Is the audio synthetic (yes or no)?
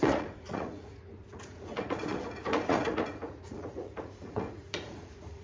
yes